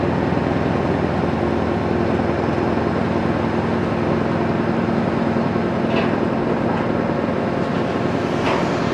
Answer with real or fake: real